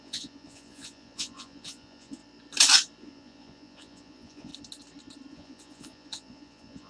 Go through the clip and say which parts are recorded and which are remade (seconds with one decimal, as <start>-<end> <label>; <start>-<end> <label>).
0.0-2.2 remade; 2.2-3.0 recorded; 3.0-4.5 remade; 4.5-5.3 recorded; 5.3-6.9 remade